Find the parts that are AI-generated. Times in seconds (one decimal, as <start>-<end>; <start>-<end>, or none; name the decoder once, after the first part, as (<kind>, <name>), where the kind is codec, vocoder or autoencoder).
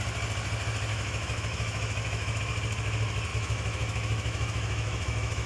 0.9-2.4 (autoencoder, DAC-VAE); 3.3-5.5